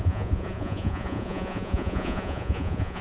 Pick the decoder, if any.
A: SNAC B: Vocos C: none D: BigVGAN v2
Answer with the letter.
B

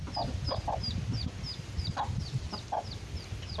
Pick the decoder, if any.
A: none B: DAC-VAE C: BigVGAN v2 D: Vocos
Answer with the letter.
A